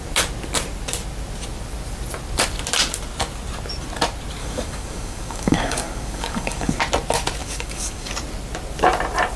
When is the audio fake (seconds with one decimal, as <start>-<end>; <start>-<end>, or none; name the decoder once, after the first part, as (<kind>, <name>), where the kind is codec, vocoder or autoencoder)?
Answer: 4.4-6.8 (codec, DAC); 7.4-8.1